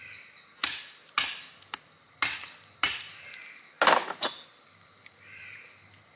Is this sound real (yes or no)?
yes